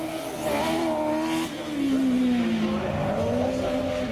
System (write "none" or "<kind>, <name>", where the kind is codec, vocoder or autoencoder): none